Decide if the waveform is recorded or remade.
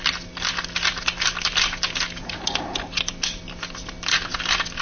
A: recorded